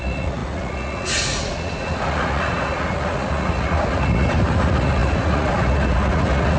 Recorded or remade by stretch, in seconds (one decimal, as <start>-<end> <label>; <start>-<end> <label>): 0.0-6.6 remade